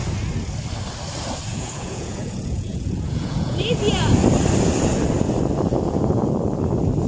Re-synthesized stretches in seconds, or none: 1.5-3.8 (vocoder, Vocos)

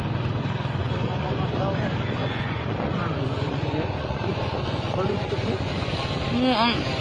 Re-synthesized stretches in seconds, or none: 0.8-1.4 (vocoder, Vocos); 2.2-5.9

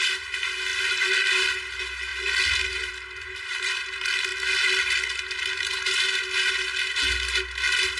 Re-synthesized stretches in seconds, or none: none